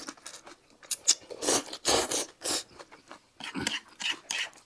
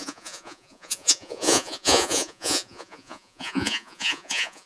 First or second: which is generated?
second